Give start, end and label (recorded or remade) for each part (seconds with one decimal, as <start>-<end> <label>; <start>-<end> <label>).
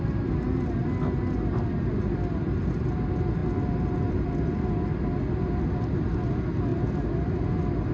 0.0-7.9 recorded